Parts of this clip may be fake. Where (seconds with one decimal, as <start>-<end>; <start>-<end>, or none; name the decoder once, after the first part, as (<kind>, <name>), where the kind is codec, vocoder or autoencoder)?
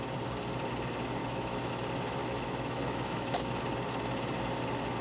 1.2-1.7 (autoencoder, DAC-VAE); 2.2-3.6